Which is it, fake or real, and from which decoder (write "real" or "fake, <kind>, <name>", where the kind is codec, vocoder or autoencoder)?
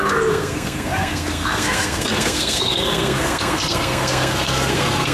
fake, codec, SNAC